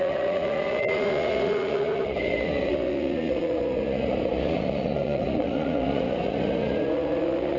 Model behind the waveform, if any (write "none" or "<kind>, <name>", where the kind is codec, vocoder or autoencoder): vocoder, Vocos